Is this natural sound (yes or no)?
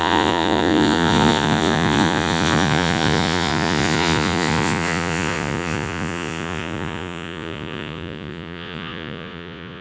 no